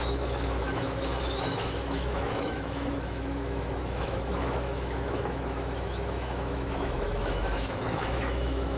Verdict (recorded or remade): remade